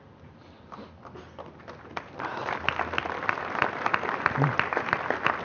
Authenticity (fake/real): real